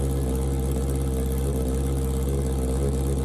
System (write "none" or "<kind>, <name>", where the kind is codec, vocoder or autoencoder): none